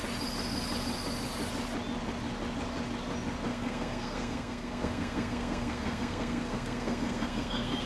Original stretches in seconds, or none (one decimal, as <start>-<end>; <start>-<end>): 0.0-3.5